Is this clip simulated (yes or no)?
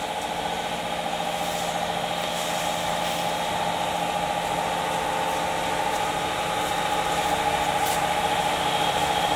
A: no